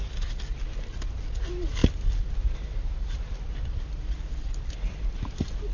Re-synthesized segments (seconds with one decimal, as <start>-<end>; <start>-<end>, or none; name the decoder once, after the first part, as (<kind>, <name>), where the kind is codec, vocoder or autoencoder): none